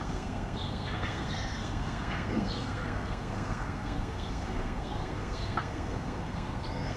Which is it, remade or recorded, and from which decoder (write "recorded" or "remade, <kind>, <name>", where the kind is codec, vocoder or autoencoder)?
remade, codec, SNAC